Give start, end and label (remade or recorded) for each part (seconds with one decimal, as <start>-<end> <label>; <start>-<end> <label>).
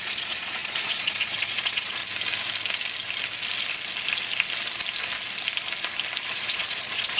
0.0-2.0 remade; 2.0-6.3 recorded; 6.3-7.2 remade